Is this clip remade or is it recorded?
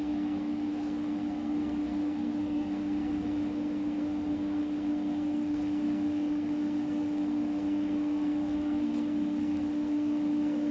remade